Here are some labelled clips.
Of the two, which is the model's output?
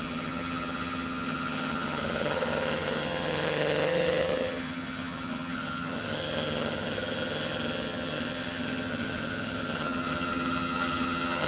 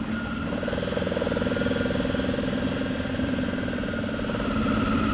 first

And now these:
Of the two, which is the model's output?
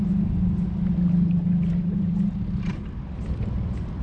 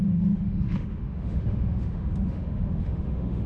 second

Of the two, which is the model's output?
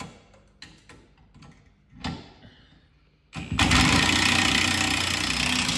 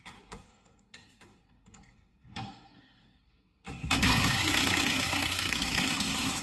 second